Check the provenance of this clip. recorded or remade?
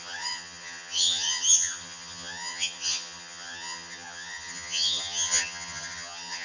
remade